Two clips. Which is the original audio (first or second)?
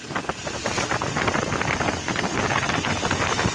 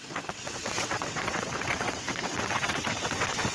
first